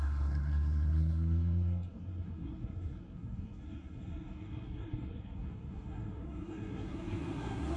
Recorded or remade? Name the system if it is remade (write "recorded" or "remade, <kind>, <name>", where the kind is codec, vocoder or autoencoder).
remade, codec, SNAC